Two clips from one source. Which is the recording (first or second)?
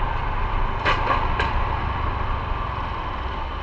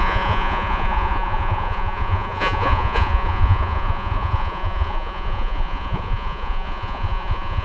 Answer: first